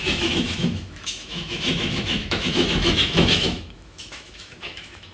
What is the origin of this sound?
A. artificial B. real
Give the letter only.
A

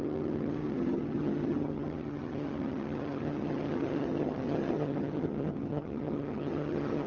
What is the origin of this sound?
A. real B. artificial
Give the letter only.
B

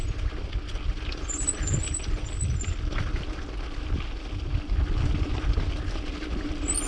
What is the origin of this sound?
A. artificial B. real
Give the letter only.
B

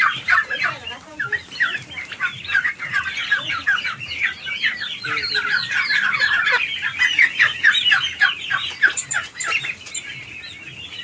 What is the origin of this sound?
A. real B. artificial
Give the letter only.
A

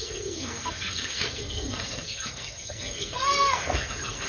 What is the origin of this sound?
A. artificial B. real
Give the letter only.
A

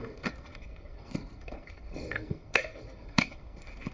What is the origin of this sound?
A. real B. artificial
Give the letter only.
B